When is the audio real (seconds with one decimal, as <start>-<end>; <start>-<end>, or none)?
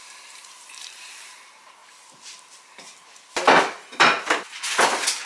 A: 1.8-5.3